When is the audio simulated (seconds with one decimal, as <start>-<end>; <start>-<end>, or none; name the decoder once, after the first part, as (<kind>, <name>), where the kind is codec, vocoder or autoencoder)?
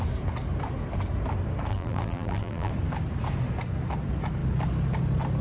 1.7-2.7 (vocoder, BigVGAN v2)